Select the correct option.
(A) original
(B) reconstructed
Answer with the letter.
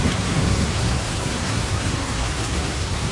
B